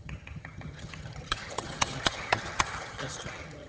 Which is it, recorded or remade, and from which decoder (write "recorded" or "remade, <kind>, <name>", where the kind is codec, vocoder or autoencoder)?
remade, vocoder, HiFi-GAN